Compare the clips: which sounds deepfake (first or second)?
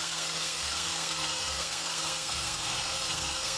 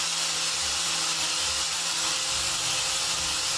first